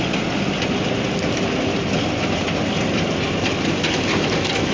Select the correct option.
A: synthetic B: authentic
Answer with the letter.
B